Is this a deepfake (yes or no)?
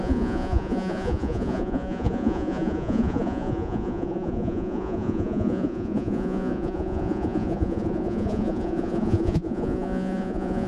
yes